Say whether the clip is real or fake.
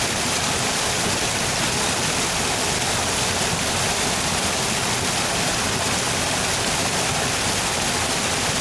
real